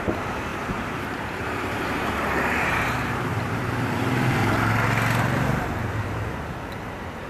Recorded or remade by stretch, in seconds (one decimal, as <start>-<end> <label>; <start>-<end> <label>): 0.0-4.4 remade; 4.4-5.2 recorded; 5.2-7.3 remade